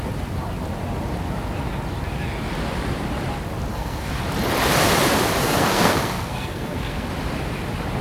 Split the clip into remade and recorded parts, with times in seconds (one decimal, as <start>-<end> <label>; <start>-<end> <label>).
0.0-3.7 recorded; 3.7-4.2 remade; 4.2-5.4 recorded; 5.4-7.1 remade; 7.1-8.0 recorded